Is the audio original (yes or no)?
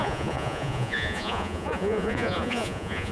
no